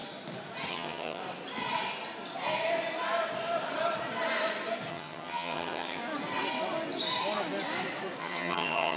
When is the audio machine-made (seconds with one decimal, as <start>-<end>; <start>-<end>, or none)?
0.7-1.2; 4.9-6.0; 8.2-9.0